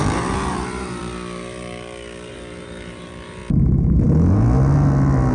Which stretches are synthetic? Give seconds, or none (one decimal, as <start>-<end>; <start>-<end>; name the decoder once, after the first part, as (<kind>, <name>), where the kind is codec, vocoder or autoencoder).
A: 0.0-1.0 (vocoder, BigVGAN v2); 2.3-3.4